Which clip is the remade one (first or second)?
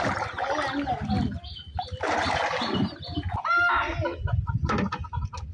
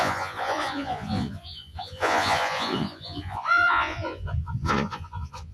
second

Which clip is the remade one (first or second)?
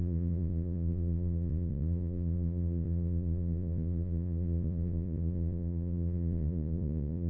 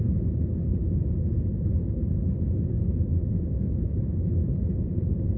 first